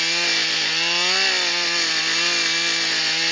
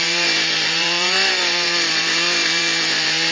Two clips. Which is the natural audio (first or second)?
first